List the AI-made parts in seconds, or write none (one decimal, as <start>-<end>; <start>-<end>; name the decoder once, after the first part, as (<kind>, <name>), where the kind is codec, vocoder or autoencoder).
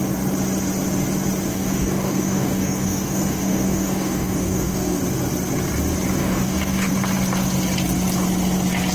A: 1.5-5.0 (codec, DAC); 6.2-6.9